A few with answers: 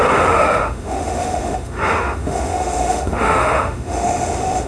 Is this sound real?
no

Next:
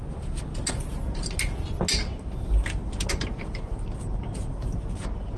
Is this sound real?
yes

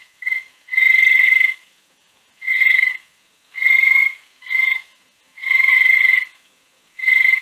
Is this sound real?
yes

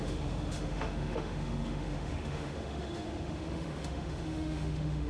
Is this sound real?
no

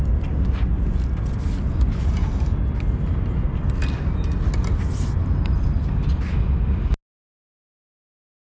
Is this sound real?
yes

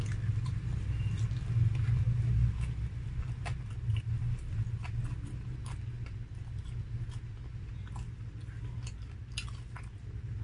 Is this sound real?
yes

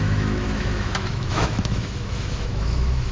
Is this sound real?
no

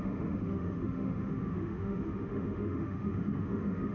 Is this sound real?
no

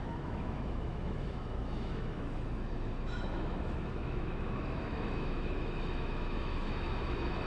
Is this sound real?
no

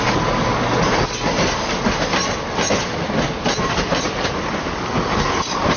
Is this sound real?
yes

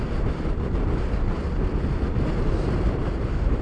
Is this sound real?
yes